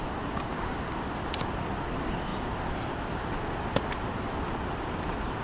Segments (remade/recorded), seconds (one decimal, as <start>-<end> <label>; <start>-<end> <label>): 0.0-5.4 recorded